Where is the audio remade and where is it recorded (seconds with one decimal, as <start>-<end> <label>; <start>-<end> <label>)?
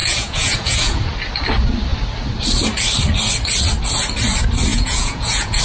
0.0-1.0 remade; 1.0-4.7 recorded; 4.7-5.6 remade